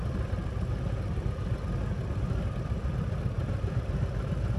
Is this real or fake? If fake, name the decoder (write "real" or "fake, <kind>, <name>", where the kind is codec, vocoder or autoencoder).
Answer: real